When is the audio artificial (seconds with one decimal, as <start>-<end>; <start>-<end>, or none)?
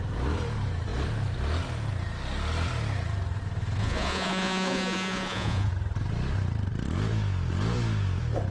3.8-5.7